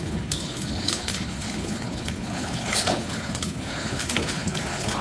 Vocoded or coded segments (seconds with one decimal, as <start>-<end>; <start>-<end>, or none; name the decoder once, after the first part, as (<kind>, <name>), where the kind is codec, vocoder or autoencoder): 0.0-5.0 (codec, HILCodec)